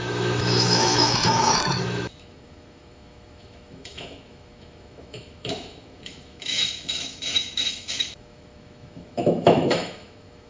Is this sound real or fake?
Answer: fake